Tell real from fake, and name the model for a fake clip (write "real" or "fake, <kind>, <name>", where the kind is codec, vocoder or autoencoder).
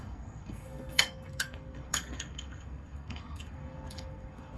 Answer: fake, codec, SNAC